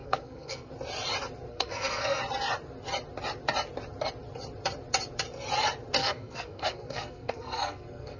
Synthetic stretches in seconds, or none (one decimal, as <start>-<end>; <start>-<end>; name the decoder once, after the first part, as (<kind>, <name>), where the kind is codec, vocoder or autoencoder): 0.0-0.7 (codec, SNAC); 1.5-2.2; 6.0-8.2

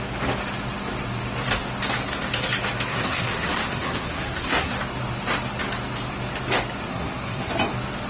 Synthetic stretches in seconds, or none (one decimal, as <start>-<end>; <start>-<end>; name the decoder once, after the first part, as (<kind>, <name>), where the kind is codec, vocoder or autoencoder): 2.9-4.7 (codec, SNAC); 6.9-7.5

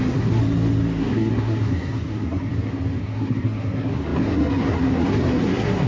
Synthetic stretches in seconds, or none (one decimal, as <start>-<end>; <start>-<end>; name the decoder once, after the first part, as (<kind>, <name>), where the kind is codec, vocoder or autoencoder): 0.0-0.4 (codec, SNAC); 1.0-2.5; 3.0-5.9

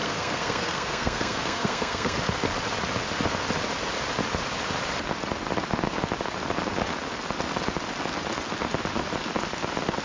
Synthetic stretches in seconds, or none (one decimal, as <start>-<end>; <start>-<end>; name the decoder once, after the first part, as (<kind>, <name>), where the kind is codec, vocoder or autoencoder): 0.0-2.2 (codec, SNAC)

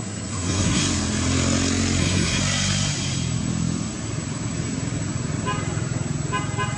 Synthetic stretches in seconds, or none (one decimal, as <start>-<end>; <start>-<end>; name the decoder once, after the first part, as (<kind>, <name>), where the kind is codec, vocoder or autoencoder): 0.0-0.8 (codec, SNAC); 2.0-2.4

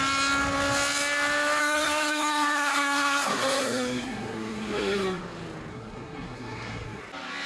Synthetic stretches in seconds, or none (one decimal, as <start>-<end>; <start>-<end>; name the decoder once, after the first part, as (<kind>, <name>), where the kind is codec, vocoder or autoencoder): 1.6-5.2 (codec, SNAC); 5.7-7.0